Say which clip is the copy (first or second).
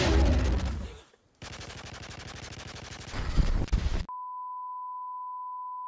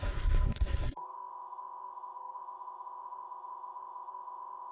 second